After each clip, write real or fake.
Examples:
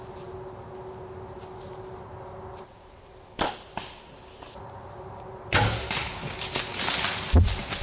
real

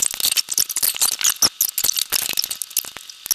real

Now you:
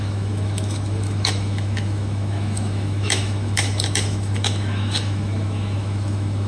fake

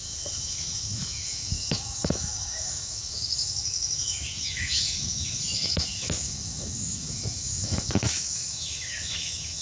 fake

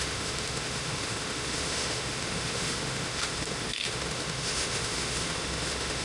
fake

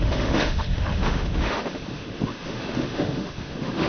fake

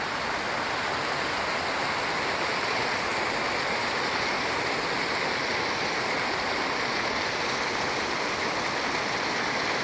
real